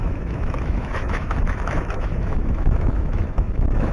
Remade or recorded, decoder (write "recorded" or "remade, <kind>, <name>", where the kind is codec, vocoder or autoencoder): remade, autoencoder, DAC-VAE